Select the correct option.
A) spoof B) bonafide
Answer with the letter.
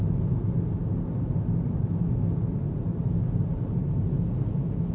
B